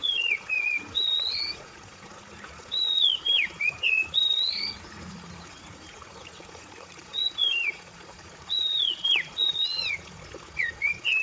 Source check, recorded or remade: remade